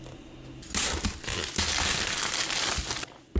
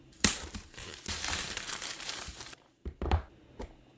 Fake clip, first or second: second